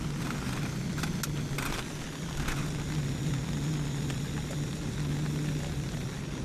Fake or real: real